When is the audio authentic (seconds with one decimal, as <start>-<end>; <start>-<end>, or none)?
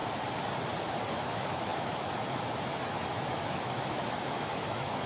0.0-1.1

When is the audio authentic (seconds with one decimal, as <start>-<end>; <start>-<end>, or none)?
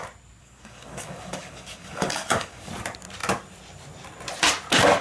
0.0-0.4; 2.7-5.0